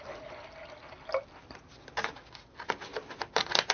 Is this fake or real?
real